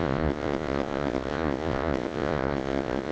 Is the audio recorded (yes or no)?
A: no